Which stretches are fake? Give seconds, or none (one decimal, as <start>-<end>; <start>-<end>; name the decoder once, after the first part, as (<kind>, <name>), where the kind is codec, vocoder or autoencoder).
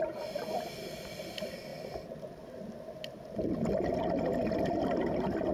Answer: none